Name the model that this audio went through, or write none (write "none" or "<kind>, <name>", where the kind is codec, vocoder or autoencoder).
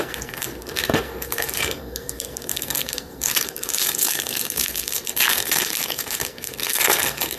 codec, SNAC